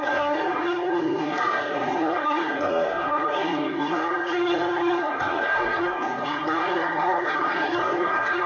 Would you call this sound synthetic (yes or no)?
yes